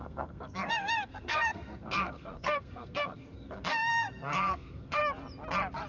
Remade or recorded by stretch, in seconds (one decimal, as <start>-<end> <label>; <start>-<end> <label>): 0.0-5.0 remade; 5.0-5.9 recorded